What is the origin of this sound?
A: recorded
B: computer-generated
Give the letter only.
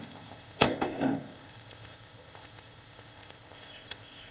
B